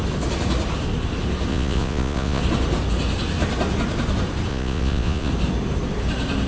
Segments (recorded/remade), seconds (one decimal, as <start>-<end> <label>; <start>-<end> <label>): 0.0-1.5 recorded; 1.5-2.4 remade; 2.4-4.5 recorded; 4.5-5.3 remade; 5.3-6.5 recorded